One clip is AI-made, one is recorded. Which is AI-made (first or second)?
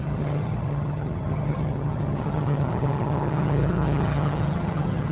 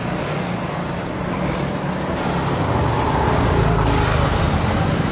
first